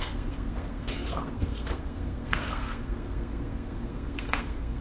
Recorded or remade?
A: remade